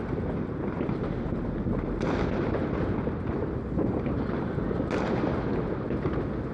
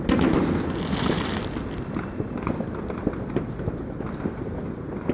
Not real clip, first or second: second